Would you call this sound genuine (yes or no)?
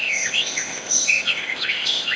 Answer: no